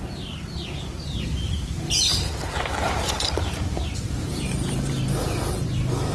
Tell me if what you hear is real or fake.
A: fake